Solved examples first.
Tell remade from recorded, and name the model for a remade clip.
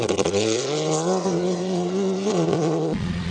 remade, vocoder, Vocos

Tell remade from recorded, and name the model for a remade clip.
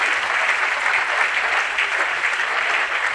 recorded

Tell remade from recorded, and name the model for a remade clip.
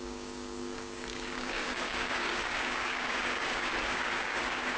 remade, codec, DAC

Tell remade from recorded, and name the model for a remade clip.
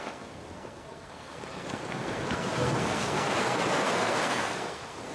remade, codec, SNAC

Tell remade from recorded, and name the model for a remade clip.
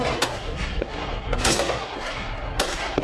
remade, codec, SNAC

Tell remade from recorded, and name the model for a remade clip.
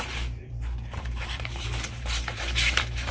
remade, vocoder, BigVGAN v2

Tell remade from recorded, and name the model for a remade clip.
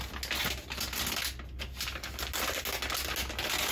recorded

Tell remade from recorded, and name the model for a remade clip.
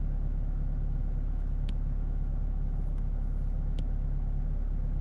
remade, autoencoder, DAC-VAE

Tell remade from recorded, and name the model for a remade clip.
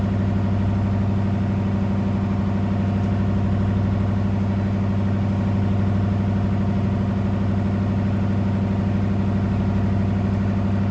recorded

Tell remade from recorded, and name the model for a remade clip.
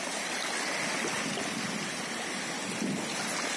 recorded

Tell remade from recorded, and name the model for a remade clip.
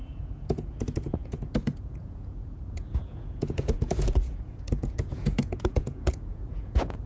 remade, vocoder, Vocos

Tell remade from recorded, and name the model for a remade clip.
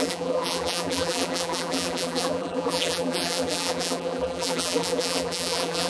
remade, vocoder, BigVGAN v2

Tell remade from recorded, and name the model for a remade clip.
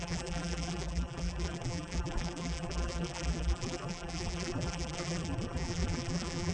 remade, vocoder, BigVGAN v2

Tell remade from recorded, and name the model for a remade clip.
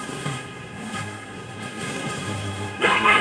remade, codec, SNAC